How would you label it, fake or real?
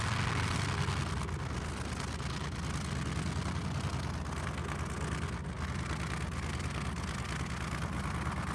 real